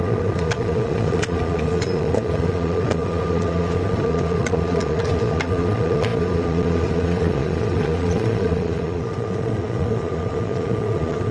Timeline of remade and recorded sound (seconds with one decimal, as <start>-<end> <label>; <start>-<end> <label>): 0.0-11.3 remade